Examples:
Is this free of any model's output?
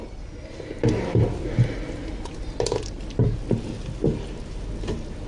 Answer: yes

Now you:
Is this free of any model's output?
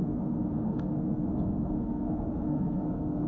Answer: no